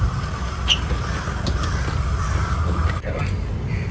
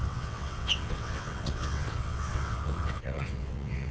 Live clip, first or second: first